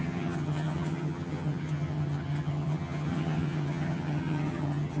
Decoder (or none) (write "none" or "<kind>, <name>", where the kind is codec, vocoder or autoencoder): vocoder, HiFi-GAN